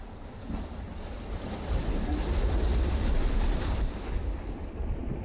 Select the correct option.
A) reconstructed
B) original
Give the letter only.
B